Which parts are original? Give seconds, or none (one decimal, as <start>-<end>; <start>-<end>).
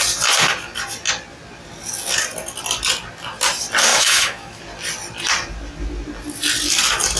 0.0-3.9; 4.6-7.2